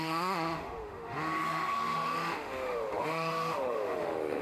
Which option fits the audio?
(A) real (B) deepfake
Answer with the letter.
B